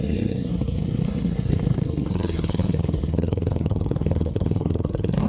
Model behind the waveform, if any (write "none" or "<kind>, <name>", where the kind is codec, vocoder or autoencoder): codec, SNAC